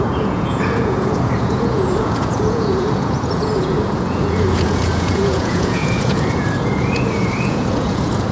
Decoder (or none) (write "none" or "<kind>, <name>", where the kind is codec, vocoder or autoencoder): vocoder, Vocos